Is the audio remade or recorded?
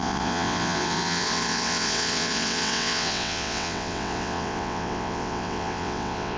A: remade